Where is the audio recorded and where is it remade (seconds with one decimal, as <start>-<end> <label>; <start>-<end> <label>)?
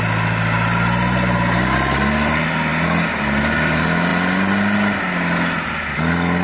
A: 0.0-6.4 recorded